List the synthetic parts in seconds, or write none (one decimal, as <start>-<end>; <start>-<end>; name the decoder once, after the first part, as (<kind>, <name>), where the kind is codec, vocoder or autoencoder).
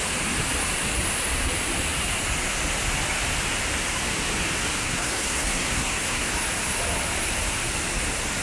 4.8-6.3 (codec, SNAC)